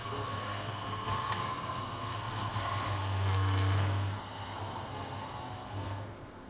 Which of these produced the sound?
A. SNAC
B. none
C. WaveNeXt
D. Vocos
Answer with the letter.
A